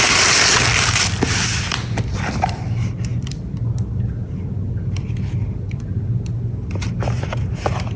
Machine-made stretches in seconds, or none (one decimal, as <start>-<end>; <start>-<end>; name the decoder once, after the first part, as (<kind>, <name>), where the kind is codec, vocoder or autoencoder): none

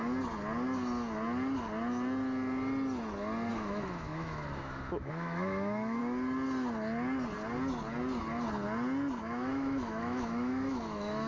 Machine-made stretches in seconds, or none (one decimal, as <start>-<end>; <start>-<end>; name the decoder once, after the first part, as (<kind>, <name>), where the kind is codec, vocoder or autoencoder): 3.5-6.0 (autoencoder, DAC-VAE); 9.2-11.3